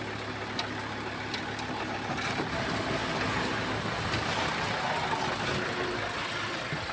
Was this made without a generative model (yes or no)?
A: yes